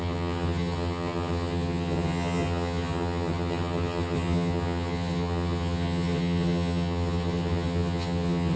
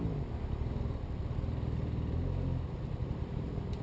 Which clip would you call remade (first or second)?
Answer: first